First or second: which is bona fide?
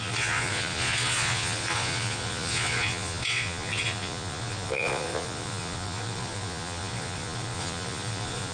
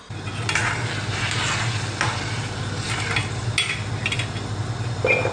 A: second